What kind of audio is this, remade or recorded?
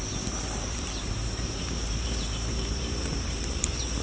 remade